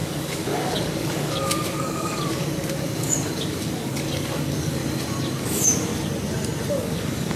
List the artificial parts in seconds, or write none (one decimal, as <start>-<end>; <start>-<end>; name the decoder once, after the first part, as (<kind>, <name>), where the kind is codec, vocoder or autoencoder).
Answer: 0.0-4.8 (codec, DAC); 5.4-5.9; 6.7-7.4